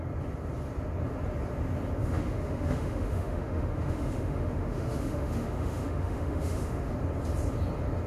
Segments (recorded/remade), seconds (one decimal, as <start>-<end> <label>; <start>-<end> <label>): 0.0-2.0 recorded; 2.0-6.9 remade; 6.9-8.1 recorded